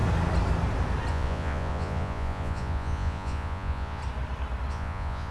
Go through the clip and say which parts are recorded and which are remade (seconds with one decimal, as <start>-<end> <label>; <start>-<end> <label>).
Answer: 0.0-1.1 recorded; 1.1-4.0 remade; 4.0-4.7 recorded; 4.7-5.3 remade